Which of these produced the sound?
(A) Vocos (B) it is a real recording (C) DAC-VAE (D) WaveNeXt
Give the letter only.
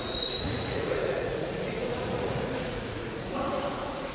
A